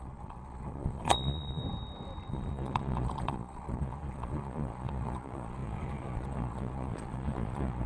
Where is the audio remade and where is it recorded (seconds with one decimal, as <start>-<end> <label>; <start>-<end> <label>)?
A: 0.0-1.6 remade; 1.6-2.3 recorded; 2.3-7.9 remade